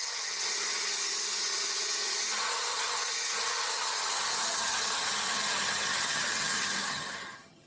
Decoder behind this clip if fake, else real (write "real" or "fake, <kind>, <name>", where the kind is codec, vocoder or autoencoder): fake, vocoder, HiFi-GAN